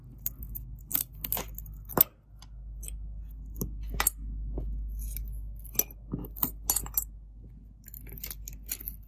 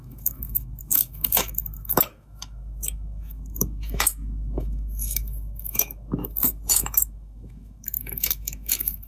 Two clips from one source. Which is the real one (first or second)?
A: first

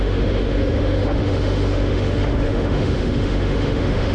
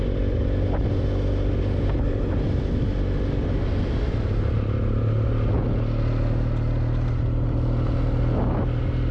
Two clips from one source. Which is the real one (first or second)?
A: second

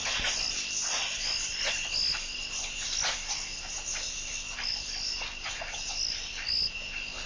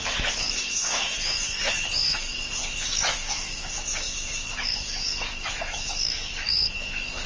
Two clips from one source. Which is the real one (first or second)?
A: first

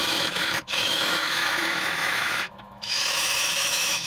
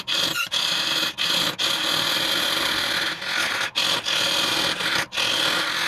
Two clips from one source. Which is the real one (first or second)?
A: second